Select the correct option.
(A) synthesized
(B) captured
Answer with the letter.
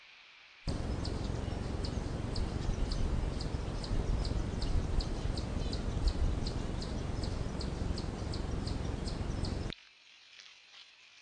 B